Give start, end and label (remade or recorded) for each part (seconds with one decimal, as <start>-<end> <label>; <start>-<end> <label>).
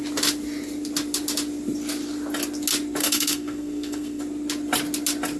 0.0-3.0 recorded; 3.0-4.2 remade; 4.2-5.4 recorded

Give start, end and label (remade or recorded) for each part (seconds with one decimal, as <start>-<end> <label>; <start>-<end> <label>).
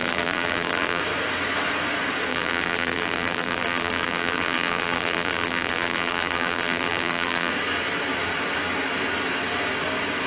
0.0-1.0 remade; 1.0-2.3 recorded; 2.3-7.5 remade; 7.5-10.3 recorded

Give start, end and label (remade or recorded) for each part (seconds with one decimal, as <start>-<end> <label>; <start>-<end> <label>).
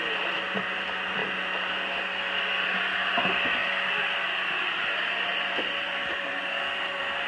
0.0-7.3 recorded